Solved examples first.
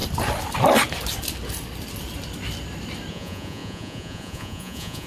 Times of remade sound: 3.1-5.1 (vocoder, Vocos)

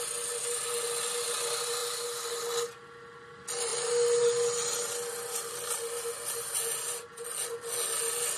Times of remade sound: none